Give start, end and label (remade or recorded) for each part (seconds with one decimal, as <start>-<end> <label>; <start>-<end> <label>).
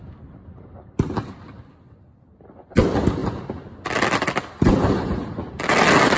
0.0-6.2 recorded